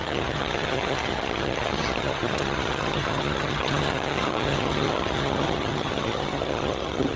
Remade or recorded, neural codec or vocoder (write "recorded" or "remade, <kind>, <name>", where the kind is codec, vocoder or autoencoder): remade, vocoder, HiFi-GAN